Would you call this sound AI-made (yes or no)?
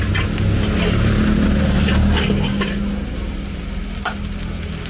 no